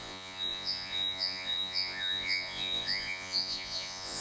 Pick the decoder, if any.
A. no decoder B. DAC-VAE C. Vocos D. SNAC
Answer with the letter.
C